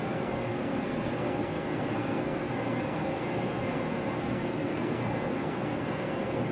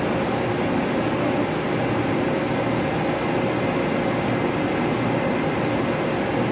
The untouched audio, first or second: second